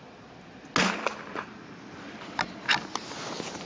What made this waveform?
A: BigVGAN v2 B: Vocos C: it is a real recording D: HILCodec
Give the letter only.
C